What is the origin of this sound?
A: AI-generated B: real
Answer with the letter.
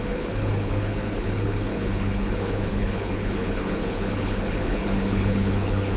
A